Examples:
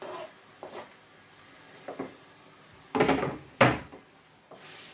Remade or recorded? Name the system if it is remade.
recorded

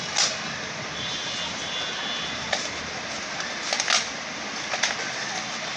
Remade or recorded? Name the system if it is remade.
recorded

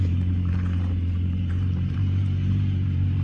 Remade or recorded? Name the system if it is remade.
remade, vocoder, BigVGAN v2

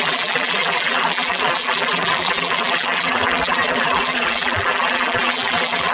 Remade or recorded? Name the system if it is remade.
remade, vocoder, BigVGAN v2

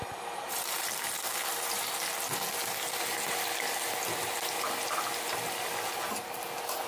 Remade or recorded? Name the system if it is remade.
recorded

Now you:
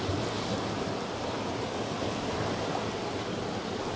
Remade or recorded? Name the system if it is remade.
recorded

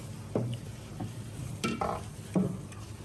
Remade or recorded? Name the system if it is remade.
recorded